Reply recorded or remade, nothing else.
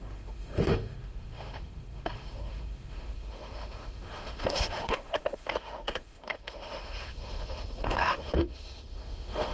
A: remade